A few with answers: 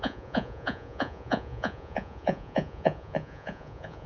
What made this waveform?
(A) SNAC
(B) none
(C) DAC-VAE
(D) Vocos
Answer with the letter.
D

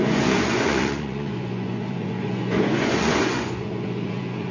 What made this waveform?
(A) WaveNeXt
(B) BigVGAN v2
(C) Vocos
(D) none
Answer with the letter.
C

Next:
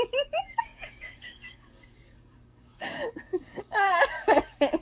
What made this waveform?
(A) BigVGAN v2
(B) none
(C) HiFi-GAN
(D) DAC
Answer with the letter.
D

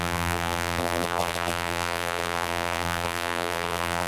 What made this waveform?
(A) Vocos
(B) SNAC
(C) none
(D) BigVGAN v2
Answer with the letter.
D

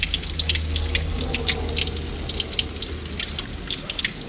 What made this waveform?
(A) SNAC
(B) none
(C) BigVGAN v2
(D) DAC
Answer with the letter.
B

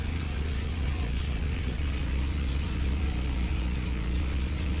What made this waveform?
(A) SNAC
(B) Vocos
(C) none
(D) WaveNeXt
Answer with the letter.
B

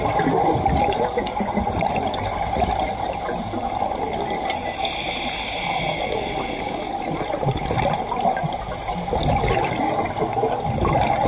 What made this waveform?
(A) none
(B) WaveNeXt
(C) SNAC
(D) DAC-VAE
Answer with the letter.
A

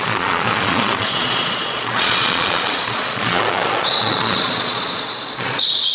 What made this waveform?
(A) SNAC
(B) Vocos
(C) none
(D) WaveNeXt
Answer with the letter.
B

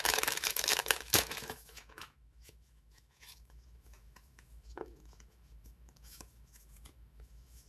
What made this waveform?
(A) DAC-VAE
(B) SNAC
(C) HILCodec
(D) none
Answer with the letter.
A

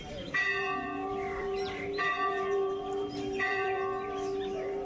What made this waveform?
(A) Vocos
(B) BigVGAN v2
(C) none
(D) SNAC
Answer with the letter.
B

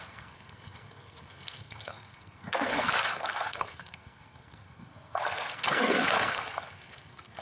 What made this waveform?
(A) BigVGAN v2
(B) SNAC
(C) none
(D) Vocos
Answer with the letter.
B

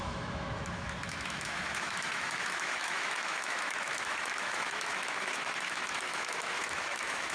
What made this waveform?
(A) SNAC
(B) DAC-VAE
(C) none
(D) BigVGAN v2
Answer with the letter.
B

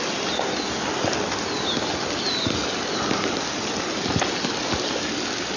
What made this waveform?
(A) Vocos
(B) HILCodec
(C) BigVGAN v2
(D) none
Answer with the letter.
D